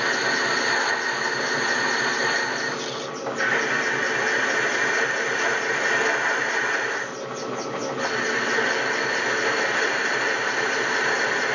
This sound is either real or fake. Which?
real